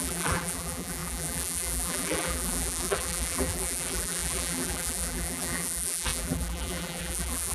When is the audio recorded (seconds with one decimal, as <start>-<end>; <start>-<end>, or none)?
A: none